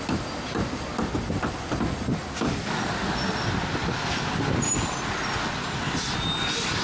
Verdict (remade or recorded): recorded